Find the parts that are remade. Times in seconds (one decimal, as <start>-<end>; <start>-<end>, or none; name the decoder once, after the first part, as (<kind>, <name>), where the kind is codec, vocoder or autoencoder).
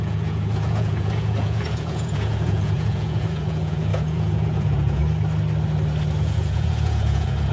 0.0-5.0 (vocoder, Vocos); 6.2-7.5